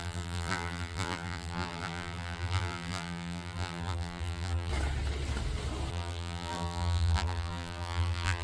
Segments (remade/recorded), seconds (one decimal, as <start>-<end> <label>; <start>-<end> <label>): 0.0-4.7 remade; 4.7-5.9 recorded; 5.9-8.4 remade